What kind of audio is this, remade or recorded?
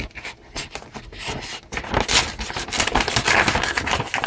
recorded